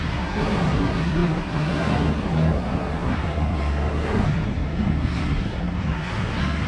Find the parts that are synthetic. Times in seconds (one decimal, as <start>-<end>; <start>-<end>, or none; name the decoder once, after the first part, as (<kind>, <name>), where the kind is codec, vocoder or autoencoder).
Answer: 0.0-6.7 (codec, SNAC)